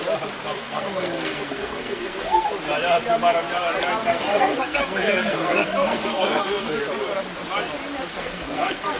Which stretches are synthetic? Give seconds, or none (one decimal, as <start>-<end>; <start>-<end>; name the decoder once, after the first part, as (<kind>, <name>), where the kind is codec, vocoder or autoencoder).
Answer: 0.6-2.5 (codec, SNAC); 4.0-6.8; 8.1-9.0